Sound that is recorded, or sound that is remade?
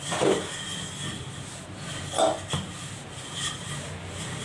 recorded